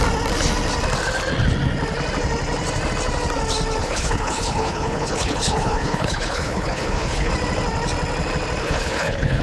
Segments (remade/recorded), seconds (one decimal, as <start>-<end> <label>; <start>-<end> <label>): 0.0-3.8 recorded; 3.8-7.3 remade; 7.3-8.6 recorded; 8.6-9.4 remade